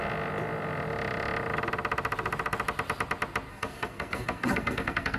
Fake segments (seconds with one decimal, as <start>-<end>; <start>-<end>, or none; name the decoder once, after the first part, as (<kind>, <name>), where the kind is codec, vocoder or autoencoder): 3.5-5.2 (codec, SNAC)